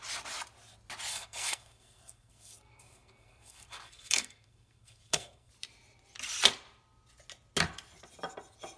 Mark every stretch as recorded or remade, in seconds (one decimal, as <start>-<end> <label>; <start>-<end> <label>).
0.0-1.1 recorded; 1.1-5.5 remade; 5.5-8.8 recorded